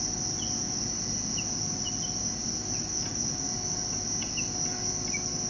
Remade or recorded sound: recorded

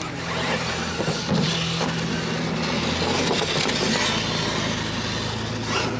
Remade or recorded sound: recorded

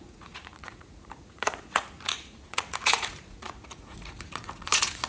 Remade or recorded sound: remade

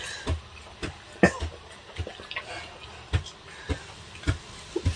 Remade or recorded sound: recorded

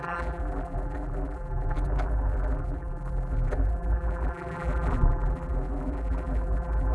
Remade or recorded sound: remade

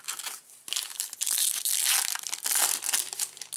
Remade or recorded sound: recorded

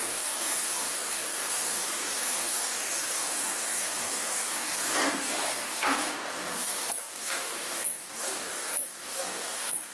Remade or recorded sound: remade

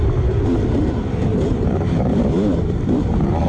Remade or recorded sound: remade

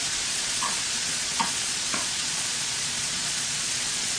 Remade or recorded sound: remade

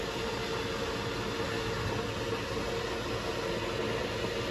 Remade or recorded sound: recorded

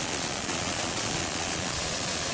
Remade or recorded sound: remade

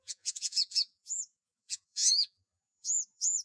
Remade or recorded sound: remade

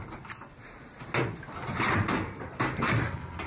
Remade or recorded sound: recorded